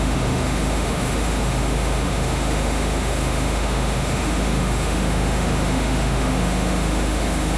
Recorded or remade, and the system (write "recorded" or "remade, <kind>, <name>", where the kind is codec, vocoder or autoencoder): remade, autoencoder, DAC-VAE